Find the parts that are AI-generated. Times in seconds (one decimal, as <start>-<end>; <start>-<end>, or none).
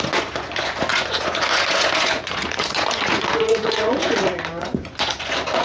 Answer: 0.0-5.6